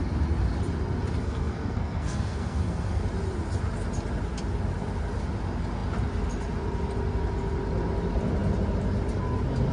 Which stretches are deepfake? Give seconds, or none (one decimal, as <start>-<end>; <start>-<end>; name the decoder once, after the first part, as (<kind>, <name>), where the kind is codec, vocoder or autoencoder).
1.2-3.0 (codec, SNAC)